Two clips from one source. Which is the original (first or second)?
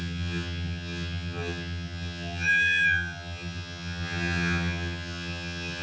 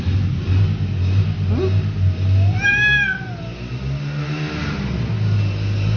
second